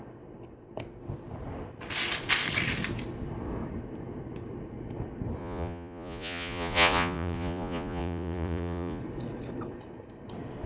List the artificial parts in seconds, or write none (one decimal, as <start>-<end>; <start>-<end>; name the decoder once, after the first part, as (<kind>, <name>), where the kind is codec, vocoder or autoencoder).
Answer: 5.4-9.0 (vocoder, Vocos)